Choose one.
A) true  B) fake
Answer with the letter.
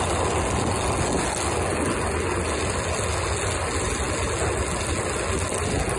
A